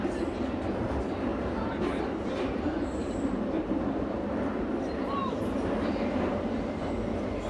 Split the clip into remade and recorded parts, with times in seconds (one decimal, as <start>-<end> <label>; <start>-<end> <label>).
0.0-3.0 recorded; 3.0-3.7 remade; 3.7-7.5 recorded